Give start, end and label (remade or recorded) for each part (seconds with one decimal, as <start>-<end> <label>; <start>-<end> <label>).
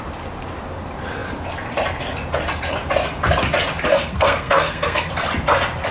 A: 0.0-3.9 recorded; 3.9-5.1 remade; 5.1-5.9 recorded